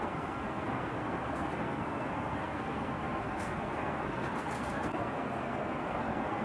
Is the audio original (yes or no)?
no